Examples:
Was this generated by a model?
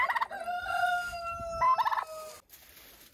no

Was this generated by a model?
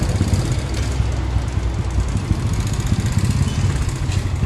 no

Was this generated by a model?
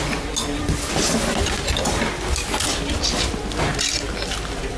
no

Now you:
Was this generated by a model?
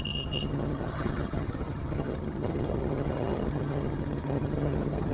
yes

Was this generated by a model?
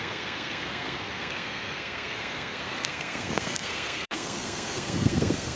yes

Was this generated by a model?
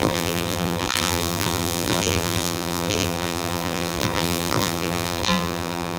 yes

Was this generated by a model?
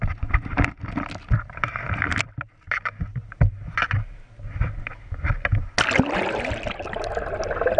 no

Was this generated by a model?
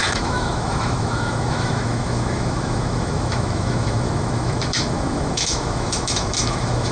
yes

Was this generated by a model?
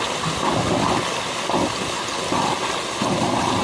no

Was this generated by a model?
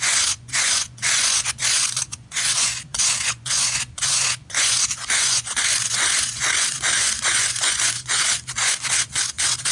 yes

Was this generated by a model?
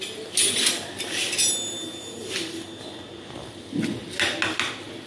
no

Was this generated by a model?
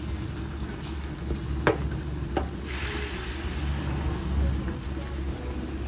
no